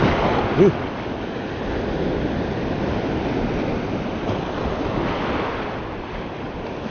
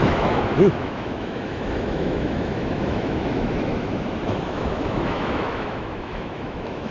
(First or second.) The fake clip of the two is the second